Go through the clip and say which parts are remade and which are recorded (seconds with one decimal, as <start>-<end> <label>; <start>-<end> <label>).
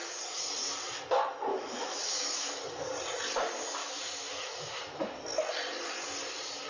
0.0-1.5 recorded; 1.5-2.6 remade; 2.6-3.8 recorded; 3.8-5.2 remade; 5.2-6.7 recorded